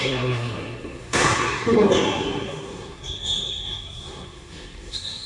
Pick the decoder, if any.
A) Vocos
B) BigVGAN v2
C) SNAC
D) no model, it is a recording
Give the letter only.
C